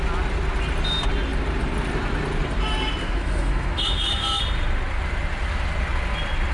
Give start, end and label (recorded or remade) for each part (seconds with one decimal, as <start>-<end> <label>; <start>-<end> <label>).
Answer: 0.0-3.0 recorded; 3.0-4.4 remade; 4.4-6.5 recorded